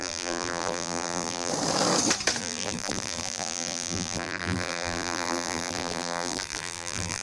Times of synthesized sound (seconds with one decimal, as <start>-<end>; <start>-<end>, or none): 0.0-1.5; 2.4-7.2